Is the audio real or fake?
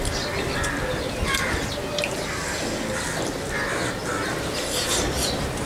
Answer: real